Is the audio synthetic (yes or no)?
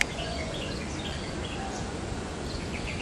yes